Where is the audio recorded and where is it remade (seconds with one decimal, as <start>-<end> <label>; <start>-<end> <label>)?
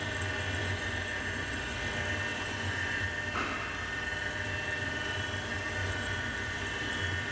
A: 0.0-0.6 recorded; 0.6-1.8 remade; 1.8-2.3 recorded; 2.3-3.0 remade; 3.0-5.8 recorded; 5.8-6.6 remade; 6.6-7.3 recorded